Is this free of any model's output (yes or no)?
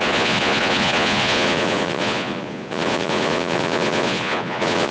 no